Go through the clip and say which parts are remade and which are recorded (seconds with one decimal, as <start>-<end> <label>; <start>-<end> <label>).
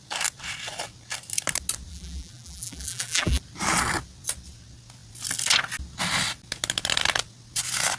0.0-1.9 recorded; 1.9-3.4 remade; 3.4-8.0 recorded